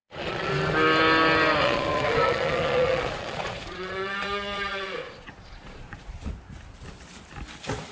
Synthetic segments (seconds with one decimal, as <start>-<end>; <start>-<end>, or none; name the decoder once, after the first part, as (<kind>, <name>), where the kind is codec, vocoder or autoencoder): 0.0-0.5 (vocoder, Vocos); 1.6-6.3

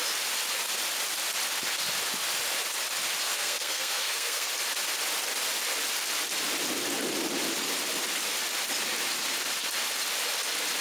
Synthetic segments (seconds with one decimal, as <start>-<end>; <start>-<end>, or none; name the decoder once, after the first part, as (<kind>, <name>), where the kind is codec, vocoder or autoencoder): 3.3-4.5 (codec, SNAC)

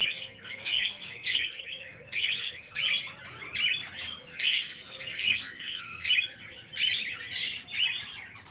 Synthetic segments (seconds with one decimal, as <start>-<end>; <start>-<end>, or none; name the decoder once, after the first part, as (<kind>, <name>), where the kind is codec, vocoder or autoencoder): 0.0-2.8 (codec, SNAC); 4.3-6.1